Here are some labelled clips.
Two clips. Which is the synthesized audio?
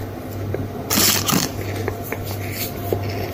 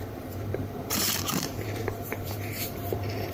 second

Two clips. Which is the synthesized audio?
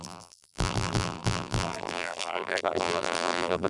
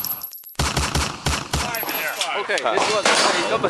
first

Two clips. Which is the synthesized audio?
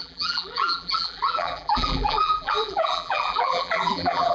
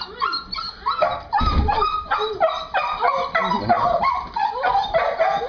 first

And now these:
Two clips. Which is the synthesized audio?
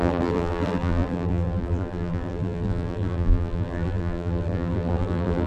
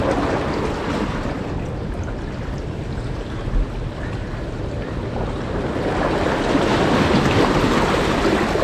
first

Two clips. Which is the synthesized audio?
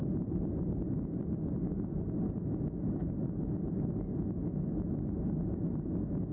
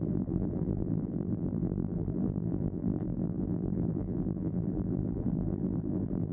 second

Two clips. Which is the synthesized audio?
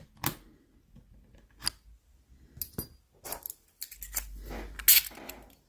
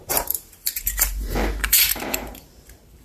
second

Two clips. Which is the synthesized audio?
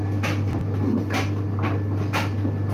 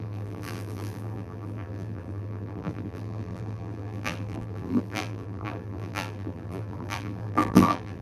second